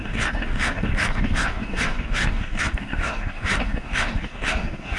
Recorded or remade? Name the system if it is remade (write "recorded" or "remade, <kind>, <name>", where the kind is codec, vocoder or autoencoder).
remade, codec, DAC